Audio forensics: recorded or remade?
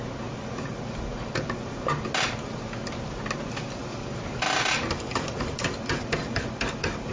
recorded